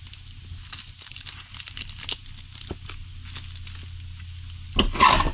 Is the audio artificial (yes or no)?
no